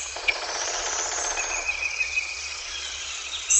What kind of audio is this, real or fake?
fake